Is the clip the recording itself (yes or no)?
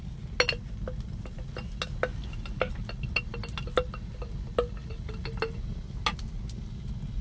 yes